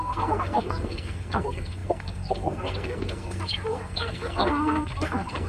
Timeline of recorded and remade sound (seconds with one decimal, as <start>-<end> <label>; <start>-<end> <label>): 0.0-5.5 remade